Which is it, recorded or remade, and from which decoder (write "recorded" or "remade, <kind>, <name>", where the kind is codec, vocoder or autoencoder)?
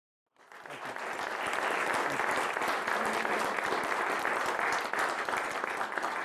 recorded